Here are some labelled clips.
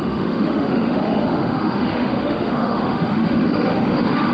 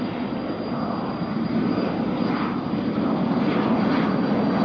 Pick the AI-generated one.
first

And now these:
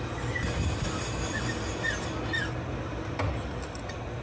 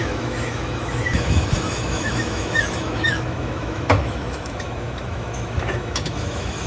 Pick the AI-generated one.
second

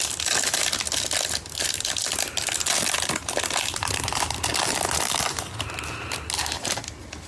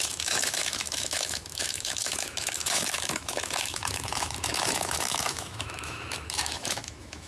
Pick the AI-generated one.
second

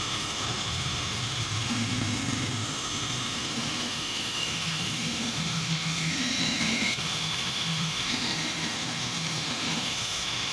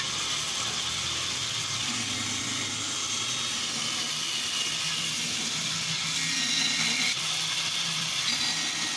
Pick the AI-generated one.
first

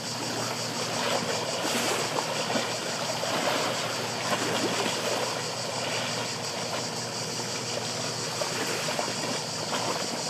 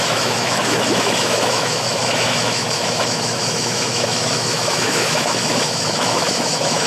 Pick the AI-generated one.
second